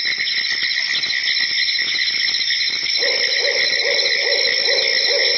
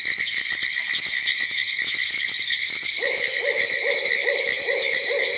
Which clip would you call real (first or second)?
first